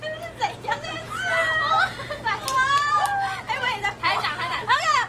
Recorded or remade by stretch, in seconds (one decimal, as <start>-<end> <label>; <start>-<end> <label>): 0.0-5.1 recorded